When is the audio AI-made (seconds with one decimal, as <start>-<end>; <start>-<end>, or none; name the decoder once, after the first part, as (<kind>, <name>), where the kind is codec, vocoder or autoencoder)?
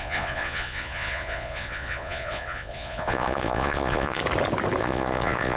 0.0-4.2 (vocoder, Vocos); 4.8-5.6